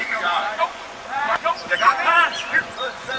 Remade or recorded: remade